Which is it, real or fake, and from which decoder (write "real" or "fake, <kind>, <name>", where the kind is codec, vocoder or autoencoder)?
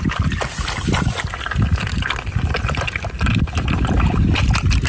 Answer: real